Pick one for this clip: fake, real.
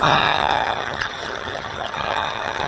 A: fake